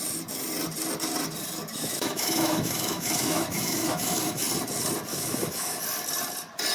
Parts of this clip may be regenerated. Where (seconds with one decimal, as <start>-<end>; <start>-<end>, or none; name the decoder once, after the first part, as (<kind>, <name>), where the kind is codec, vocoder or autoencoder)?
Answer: 1.7-4.4 (autoencoder, DAC-VAE); 5.1-5.8